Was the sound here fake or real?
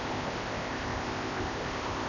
fake